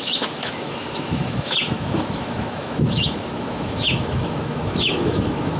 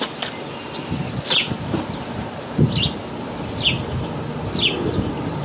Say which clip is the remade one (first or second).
first